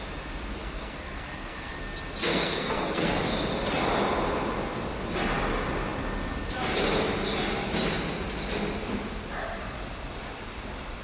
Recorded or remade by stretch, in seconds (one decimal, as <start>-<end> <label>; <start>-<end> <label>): 0.0-0.6 recorded; 0.6-1.8 remade; 1.8-2.3 recorded; 2.3-3.2 remade; 3.2-11.0 recorded